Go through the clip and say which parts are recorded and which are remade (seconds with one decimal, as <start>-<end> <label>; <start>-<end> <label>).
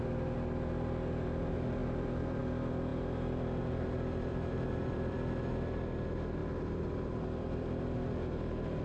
0.0-1.8 recorded; 1.8-2.4 remade; 2.4-4.3 recorded; 4.3-6.0 remade; 6.0-6.4 recorded; 6.4-7.8 remade; 7.8-8.8 recorded